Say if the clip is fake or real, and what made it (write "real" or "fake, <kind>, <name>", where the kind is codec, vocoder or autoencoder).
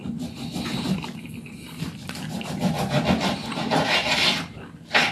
real